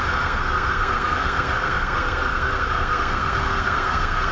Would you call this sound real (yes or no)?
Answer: no